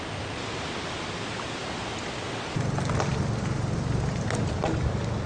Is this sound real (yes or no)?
yes